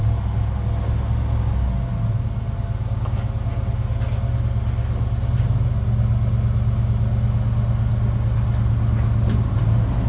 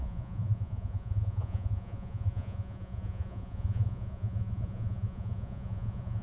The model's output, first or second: second